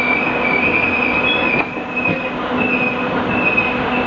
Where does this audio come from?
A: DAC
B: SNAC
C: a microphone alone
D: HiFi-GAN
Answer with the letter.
C